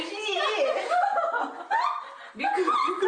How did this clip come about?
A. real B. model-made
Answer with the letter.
A